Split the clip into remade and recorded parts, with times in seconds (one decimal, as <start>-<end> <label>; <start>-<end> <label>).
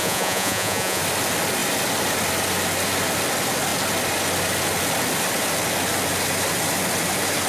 0.0-1.0 remade; 1.0-7.5 recorded